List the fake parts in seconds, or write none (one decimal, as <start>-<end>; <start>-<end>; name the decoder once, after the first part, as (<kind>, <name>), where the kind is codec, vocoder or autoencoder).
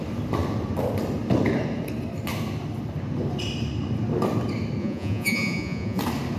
4.8-6.0 (vocoder, Vocos)